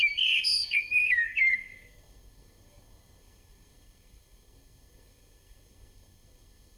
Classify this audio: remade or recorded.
remade